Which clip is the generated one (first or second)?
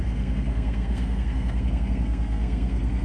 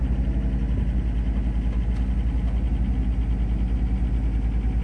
first